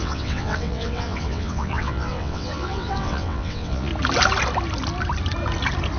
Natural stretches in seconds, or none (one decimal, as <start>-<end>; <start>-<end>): 3.9-6.0